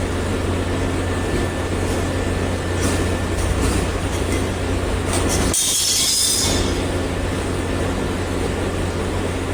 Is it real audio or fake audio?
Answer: real